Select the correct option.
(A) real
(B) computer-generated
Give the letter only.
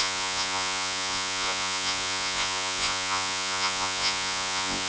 B